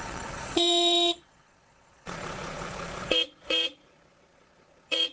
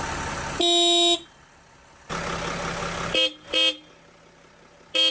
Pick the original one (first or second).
second